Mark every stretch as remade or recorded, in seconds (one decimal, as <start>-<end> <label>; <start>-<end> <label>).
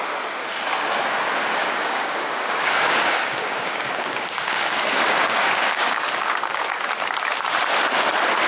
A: 0.0-1.6 recorded; 1.6-6.7 remade; 6.7-8.5 recorded